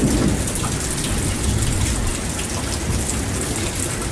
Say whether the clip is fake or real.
real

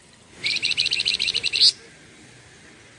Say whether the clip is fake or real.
real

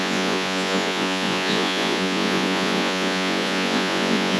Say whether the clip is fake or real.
fake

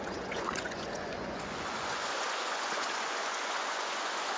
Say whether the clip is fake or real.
fake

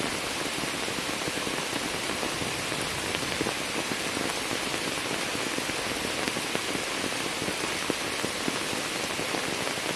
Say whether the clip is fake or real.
real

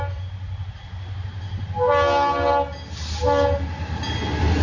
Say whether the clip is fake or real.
real